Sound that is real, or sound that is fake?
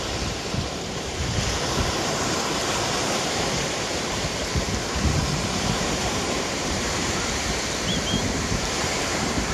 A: fake